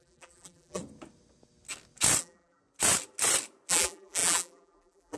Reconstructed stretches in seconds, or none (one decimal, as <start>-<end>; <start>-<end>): 0.0-0.8; 2.2-2.6; 3.7-5.2